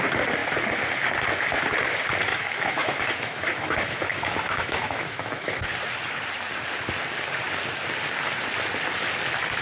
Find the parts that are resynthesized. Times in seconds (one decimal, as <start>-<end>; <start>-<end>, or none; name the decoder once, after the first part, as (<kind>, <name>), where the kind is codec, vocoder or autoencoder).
2.3-5.5 (autoencoder, DAC-VAE)

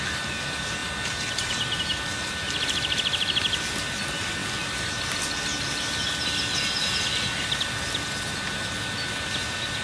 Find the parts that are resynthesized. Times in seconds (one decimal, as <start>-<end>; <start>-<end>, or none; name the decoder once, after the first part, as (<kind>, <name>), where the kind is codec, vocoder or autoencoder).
none

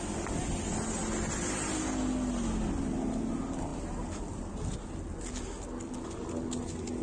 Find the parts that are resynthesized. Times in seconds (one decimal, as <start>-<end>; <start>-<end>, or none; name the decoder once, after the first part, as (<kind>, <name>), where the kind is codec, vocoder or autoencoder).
none

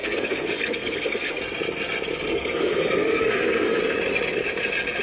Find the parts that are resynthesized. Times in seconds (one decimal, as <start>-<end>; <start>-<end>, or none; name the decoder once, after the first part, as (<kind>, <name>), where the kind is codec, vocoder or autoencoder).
0.0-1.4 (codec, SNAC); 2.3-3.8

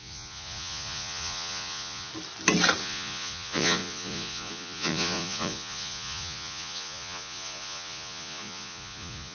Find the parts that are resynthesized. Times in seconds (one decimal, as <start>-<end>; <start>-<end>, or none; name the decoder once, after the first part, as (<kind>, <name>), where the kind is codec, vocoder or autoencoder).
0.0-2.1 (vocoder, Vocos); 2.8-9.3

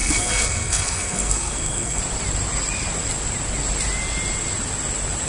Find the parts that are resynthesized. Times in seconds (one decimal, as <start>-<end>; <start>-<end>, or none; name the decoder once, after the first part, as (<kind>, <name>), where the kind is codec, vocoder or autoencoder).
0.0-2.0 (codec, SNAC)